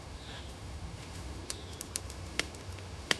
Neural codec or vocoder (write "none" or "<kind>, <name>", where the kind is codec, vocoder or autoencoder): autoencoder, DAC-VAE